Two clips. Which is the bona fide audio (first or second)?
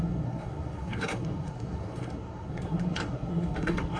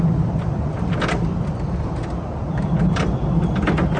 second